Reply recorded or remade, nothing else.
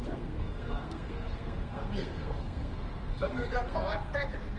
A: remade